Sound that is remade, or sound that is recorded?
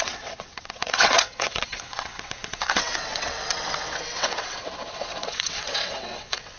remade